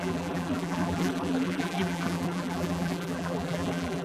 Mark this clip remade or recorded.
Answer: remade